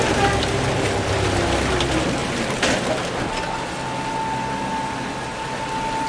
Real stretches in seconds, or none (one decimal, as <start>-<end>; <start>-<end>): 0.0-6.1